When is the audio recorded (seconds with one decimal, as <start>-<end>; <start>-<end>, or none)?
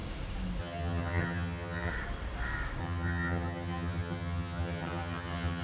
0.0-0.6; 1.9-2.8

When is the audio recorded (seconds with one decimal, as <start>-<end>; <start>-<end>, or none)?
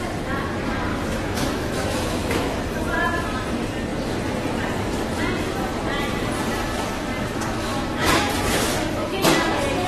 0.0-0.9; 2.6-7.7; 9.2-9.9